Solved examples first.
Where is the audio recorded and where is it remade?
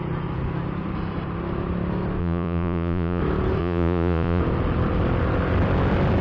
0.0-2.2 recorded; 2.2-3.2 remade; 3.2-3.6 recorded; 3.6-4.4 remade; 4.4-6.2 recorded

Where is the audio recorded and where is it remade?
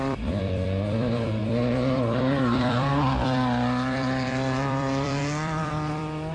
0.0-6.3 remade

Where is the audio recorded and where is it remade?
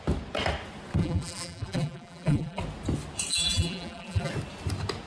0.0-1.0 recorded; 1.0-2.6 remade; 2.6-3.3 recorded; 3.3-4.3 remade; 4.3-5.1 recorded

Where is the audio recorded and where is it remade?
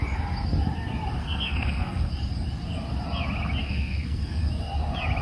0.0-1.2 recorded; 1.2-2.1 remade; 2.1-3.6 recorded; 3.6-4.4 remade; 4.4-5.2 recorded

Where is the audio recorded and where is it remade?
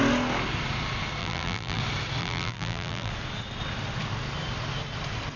0.0-1.2 recorded; 1.2-1.8 remade; 1.8-2.2 recorded; 2.2-3.1 remade; 3.1-5.4 recorded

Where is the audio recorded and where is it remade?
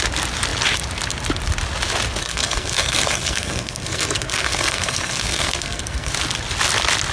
0.0-2.2 recorded; 2.2-6.1 remade; 6.1-7.1 recorded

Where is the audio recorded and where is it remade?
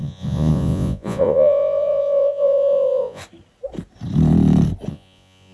0.0-3.2 remade; 3.2-4.9 recorded; 4.9-5.5 remade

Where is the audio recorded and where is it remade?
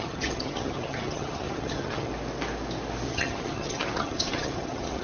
0.0-2.1 remade; 2.1-3.1 recorded; 3.1-5.0 remade